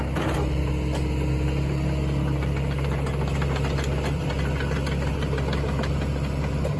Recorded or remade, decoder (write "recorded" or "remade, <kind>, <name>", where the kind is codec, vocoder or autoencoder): recorded